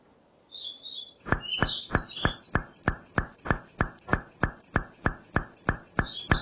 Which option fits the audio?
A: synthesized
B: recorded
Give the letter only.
B